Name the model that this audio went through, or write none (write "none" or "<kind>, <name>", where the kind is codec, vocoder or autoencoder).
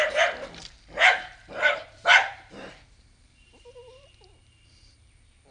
vocoder, BigVGAN v2